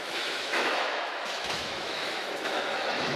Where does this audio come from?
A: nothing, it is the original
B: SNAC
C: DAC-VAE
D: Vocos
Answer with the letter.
C